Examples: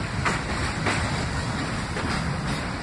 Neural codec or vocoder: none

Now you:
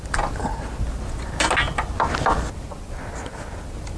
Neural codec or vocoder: none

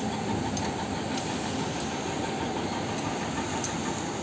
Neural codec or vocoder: none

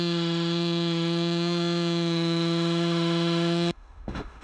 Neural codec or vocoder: autoencoder, DAC-VAE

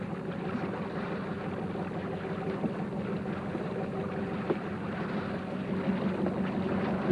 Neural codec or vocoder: none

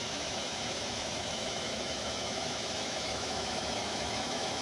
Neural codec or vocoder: autoencoder, DAC-VAE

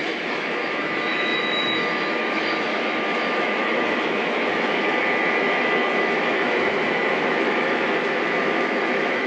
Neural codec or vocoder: autoencoder, DAC-VAE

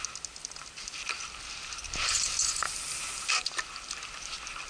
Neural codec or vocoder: none